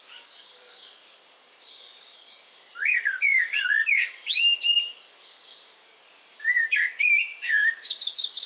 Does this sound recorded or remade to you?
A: remade